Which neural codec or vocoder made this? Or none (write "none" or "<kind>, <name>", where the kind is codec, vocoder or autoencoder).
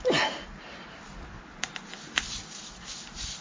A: none